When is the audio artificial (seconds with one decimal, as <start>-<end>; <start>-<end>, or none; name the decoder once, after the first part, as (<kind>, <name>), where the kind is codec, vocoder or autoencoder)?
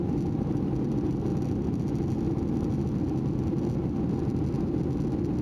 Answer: none